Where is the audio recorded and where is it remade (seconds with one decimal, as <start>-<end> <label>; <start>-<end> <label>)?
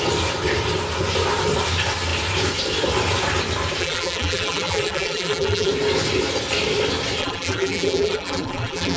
0.0-3.8 recorded; 3.8-5.7 remade; 5.7-7.2 recorded; 7.2-9.0 remade